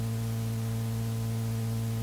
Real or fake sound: real